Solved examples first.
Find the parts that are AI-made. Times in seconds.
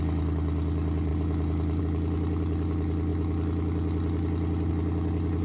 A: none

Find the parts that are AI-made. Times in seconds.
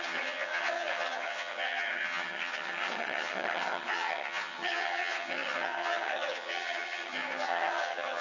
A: 0.0-8.2 (vocoder, HiFi-GAN)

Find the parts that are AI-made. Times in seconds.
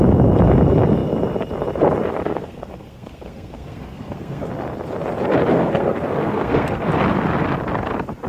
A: 2.1-4.5 (codec, SNAC); 5.5-6.9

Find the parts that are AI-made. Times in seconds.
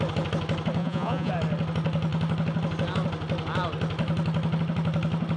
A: 0.8-1.3 (vocoder, Vocos)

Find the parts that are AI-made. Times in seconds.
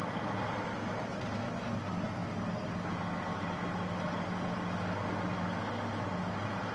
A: none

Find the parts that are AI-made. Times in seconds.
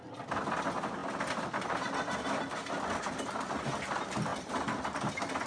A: none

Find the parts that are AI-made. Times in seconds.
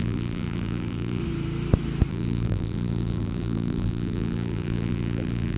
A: 0.0-1.2 (vocoder, BigVGAN v2); 2.1-5.6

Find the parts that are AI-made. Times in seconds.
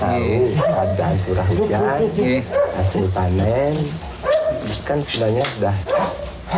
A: none